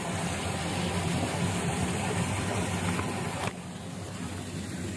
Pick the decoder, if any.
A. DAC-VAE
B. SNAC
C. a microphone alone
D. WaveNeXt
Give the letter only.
C